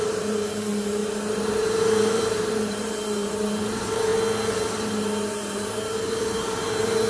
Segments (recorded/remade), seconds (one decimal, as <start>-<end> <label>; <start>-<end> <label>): 0.0-4.1 remade; 4.1-4.8 recorded; 4.8-7.1 remade